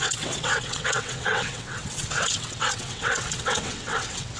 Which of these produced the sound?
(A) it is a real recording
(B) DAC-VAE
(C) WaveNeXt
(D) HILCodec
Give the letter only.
C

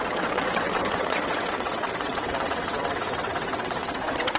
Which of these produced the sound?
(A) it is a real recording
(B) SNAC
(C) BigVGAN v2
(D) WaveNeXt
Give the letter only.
D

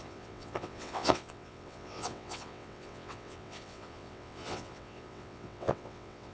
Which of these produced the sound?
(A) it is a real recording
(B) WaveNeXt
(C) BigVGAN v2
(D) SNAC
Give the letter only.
B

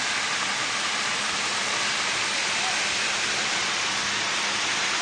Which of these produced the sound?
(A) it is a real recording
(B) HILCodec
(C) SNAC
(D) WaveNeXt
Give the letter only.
A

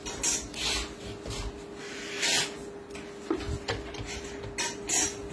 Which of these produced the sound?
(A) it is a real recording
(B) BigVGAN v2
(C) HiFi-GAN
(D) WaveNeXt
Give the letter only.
A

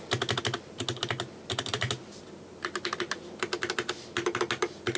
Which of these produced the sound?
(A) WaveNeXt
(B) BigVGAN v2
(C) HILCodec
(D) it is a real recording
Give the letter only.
D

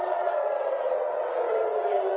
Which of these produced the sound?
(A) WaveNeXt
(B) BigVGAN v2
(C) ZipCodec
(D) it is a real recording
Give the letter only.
A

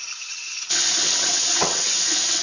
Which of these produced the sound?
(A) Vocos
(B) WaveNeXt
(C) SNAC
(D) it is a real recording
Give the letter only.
B